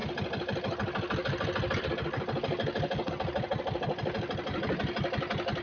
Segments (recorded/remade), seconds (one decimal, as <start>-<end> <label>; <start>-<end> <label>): 0.0-5.6 recorded